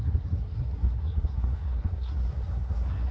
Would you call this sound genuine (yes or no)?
no